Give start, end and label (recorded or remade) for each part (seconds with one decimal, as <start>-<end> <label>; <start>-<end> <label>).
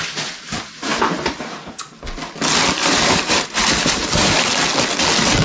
0.0-0.9 recorded; 0.9-2.0 remade; 2.0-2.8 recorded; 2.8-4.4 remade; 4.4-5.4 recorded